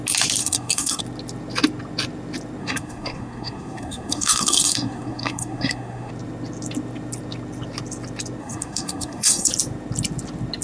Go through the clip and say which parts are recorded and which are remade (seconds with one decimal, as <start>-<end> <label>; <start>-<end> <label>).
0.0-0.4 recorded; 0.4-1.0 remade; 1.0-2.6 recorded; 2.6-6.1 remade; 6.1-8.4 recorded; 8.4-9.5 remade; 9.5-10.6 recorded